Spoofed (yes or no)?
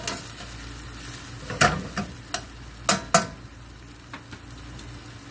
no